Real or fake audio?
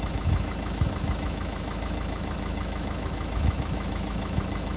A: fake